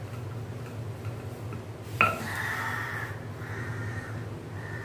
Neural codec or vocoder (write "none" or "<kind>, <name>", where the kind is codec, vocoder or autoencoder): none